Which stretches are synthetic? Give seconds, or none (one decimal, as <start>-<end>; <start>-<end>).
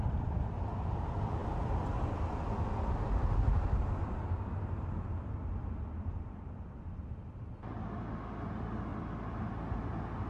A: 8.9-10.3